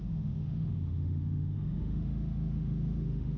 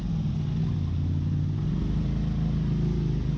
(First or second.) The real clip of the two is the second